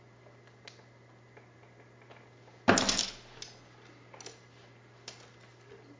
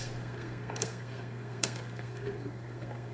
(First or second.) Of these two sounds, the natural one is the first